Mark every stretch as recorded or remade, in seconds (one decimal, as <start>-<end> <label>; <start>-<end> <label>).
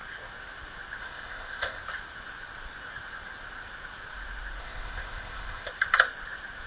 0.0-1.0 recorded; 1.0-1.8 remade; 1.8-4.6 recorded; 4.6-5.7 remade; 5.7-6.7 recorded